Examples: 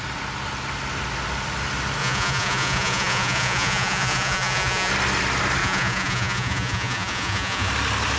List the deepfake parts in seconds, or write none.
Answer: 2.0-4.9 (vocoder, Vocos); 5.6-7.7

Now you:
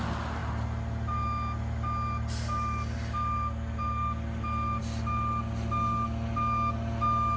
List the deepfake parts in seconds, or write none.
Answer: none

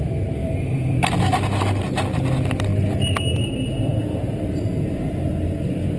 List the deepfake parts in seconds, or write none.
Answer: 0.4-1.2 (vocoder, BigVGAN v2)

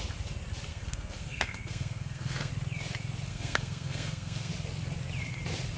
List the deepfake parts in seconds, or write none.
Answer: 0.7-2.5 (codec, SNAC); 3.3-4.5

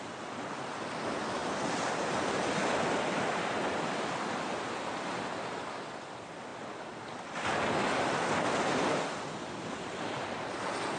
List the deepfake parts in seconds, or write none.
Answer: none

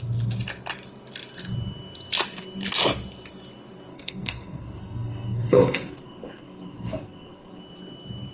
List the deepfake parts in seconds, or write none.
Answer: 3.9-7.6 (codec, SNAC)

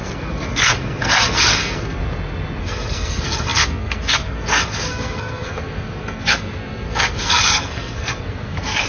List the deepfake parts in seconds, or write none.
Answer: 0.0-2.0 (codec, SNAC); 2.6-8.9